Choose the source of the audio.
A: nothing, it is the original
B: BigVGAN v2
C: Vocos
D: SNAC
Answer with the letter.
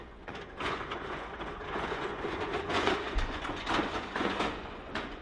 C